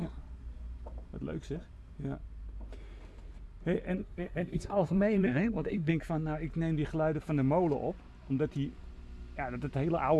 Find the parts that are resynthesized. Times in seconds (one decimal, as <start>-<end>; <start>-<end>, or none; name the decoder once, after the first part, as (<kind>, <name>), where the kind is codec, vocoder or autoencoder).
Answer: 4.0-5.9 (codec, SNAC)